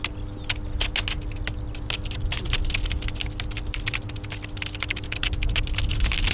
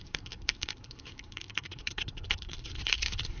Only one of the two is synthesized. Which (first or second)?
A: second